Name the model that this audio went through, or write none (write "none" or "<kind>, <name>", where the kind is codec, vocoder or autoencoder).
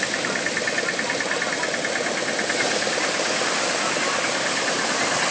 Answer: none